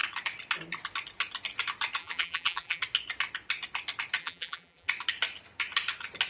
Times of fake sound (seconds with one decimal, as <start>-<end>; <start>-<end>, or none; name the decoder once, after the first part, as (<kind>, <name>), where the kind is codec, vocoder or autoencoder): 2.0-2.8 (vocoder, BigVGAN v2); 4.2-4.9